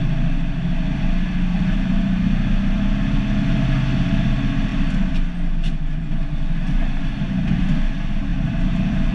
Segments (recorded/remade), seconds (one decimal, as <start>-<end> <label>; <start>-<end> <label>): 0.0-1.5 recorded; 1.5-2.8 remade; 2.8-8.3 recorded; 8.3-9.1 remade